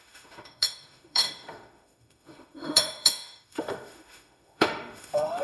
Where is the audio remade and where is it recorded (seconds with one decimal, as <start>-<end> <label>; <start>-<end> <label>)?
0.0-5.4 remade